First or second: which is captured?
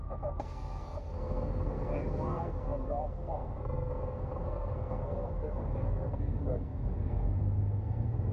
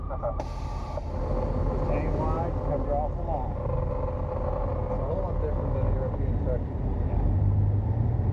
second